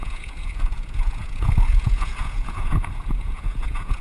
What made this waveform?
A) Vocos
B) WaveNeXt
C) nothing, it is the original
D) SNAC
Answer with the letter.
A